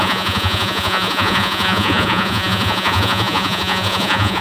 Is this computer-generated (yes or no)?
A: yes